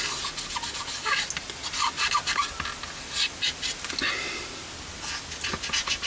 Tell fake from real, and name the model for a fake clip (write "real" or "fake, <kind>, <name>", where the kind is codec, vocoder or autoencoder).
real